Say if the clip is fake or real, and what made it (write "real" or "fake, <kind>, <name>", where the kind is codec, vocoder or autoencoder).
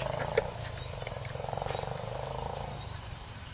fake, vocoder, BigVGAN v2